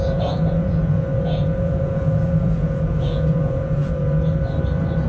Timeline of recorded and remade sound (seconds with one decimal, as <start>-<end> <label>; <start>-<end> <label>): 0.0-4.0 remade; 4.0-5.1 recorded